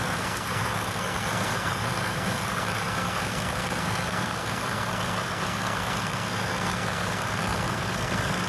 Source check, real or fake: fake